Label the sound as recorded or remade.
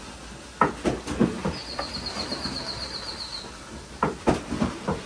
recorded